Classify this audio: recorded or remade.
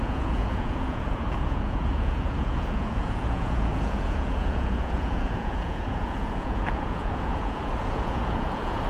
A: remade